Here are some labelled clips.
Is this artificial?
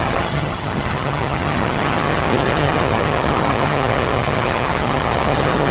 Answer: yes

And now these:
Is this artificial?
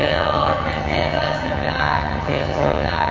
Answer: yes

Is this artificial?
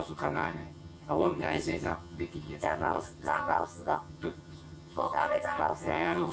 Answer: yes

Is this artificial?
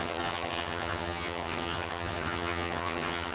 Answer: yes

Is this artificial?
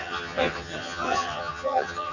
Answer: yes